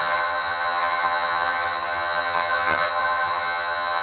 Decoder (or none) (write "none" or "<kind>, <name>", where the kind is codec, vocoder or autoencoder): vocoder, HiFi-GAN